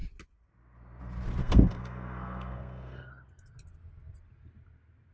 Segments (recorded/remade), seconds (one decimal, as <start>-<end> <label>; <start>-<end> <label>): 0.0-1.4 recorded; 1.4-3.1 remade; 3.1-5.1 recorded

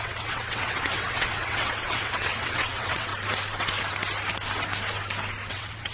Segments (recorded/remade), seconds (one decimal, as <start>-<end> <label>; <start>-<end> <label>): 0.0-3.1 remade; 3.1-5.5 recorded; 5.5-5.9 remade

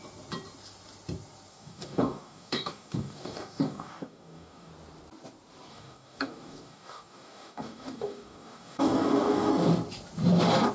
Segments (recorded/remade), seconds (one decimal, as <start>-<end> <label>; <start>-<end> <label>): 0.0-1.5 recorded; 1.5-4.7 remade; 4.7-5.7 recorded; 5.7-9.5 remade; 9.5-10.7 recorded

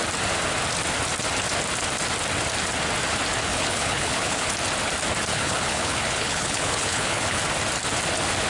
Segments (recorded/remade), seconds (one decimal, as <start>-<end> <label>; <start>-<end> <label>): 0.0-3.5 recorded; 3.5-4.5 remade; 4.5-5.3 recorded; 5.3-7.4 remade; 7.4-8.5 recorded